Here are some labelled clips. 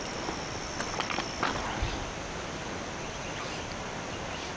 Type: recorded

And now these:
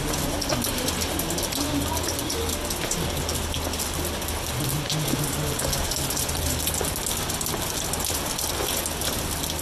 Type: recorded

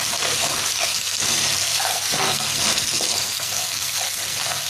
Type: remade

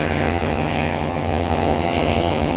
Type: remade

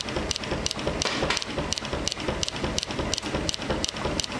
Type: recorded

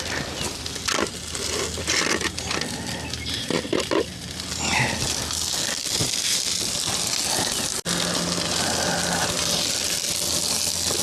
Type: recorded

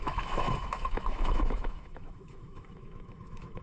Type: remade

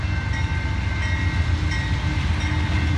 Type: recorded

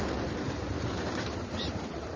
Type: recorded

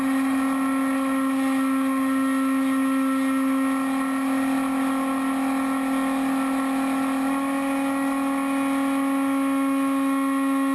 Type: recorded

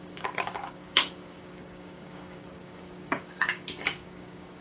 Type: remade